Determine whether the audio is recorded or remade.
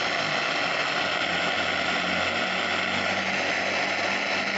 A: recorded